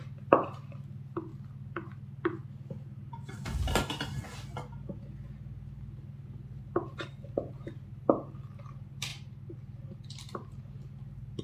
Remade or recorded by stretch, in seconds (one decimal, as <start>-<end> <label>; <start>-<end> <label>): 0.0-1.3 remade; 1.3-5.0 recorded; 5.0-11.4 remade